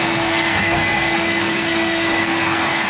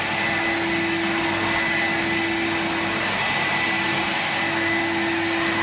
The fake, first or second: first